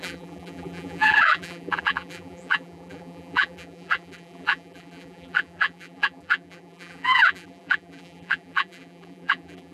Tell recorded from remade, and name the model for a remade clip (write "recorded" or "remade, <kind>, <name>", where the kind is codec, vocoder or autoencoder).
remade, vocoder, BigVGAN v2